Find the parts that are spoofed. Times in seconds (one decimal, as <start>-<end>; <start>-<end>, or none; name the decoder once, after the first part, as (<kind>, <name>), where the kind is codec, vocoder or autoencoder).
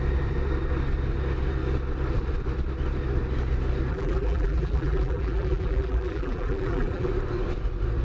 3.9-7.1 (vocoder, BigVGAN v2)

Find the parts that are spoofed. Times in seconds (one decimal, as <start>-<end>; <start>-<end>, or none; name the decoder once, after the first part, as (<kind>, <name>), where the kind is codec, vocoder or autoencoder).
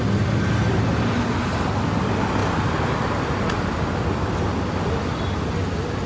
none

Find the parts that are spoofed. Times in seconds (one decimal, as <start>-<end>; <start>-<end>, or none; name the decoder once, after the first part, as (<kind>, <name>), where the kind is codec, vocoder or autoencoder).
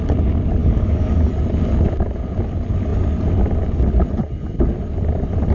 0.6-1.3 (codec, DAC)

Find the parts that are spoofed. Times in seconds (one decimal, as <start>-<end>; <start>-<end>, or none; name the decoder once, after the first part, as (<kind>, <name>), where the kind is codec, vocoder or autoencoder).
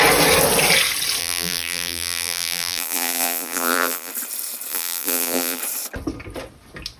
1.2-4.1 (vocoder, BigVGAN v2); 4.7-5.6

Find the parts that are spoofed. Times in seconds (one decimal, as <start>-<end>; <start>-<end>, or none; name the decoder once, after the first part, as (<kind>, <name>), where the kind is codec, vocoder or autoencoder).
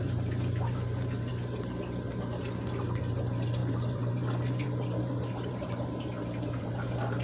0.0-1.3 (vocoder, BigVGAN v2); 3.0-7.2